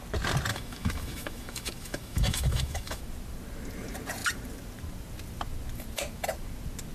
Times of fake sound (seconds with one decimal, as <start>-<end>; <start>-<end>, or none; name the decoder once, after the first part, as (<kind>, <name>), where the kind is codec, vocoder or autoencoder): 0.5-3.0 (autoencoder, DAC-VAE)

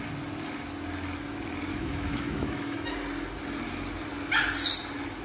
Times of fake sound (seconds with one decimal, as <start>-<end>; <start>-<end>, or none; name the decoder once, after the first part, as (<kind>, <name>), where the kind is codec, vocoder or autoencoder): 1.7-2.9 (autoencoder, DAC-VAE)

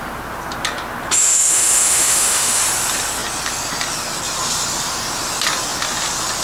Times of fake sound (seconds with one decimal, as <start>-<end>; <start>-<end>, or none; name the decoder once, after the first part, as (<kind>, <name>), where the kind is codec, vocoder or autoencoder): 1.2-2.6 (autoencoder, DAC-VAE)

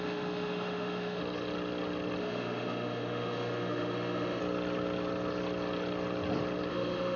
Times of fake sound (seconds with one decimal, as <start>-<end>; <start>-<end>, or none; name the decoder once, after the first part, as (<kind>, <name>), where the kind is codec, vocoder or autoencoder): 0.0-1.2 (autoencoder, DAC-VAE); 2.2-4.4; 6.7-7.2

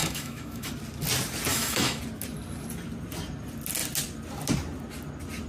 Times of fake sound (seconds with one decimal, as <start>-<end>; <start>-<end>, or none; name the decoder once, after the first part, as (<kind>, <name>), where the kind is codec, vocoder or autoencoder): 0.0-0.7 (autoencoder, DAC-VAE); 1.5-2.0

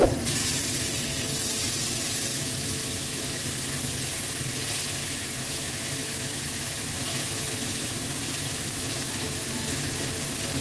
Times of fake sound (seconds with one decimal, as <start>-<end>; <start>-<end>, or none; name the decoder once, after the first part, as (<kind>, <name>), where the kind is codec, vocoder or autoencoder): 2.3-3.4 (autoencoder, DAC-VAE); 5.0-10.0

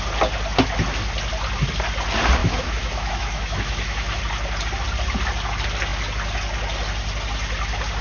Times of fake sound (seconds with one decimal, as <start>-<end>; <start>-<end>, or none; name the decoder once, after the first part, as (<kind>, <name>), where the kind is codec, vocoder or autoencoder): 2.4-4.2 (autoencoder, DAC-VAE)